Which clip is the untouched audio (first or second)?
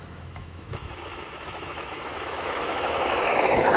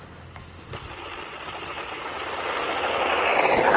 second